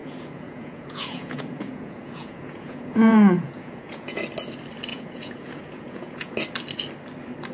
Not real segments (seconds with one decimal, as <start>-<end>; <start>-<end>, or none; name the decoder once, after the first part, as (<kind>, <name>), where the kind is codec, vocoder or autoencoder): 0.0-4.2 (vocoder, Vocos); 4.9-6.3